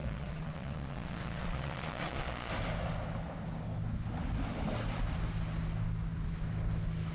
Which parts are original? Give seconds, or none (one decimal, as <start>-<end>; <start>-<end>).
2.5-7.1